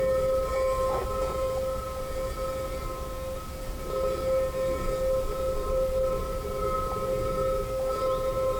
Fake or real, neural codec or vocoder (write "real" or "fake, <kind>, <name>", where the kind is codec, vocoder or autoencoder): real